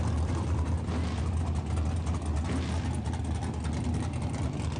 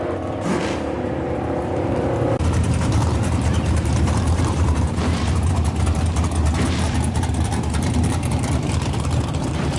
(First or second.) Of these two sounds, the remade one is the second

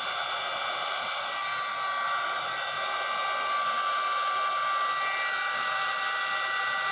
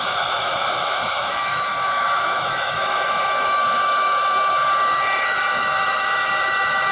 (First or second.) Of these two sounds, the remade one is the second